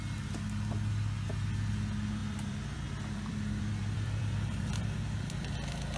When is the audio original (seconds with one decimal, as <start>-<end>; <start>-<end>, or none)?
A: 0.0-2.2